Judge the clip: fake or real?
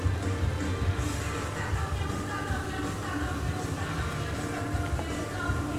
real